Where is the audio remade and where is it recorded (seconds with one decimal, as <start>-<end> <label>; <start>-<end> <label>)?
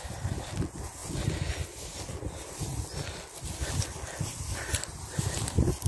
0.0-5.9 recorded